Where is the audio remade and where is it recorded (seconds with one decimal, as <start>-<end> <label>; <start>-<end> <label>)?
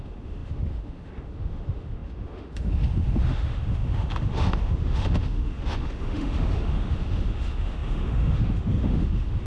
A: 0.0-9.5 remade